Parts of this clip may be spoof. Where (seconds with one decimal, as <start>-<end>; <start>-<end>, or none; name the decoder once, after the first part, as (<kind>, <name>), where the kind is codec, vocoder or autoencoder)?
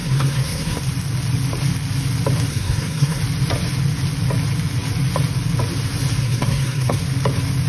0.0-0.8 (codec, SNAC); 2.5-3.2; 6.2-7.0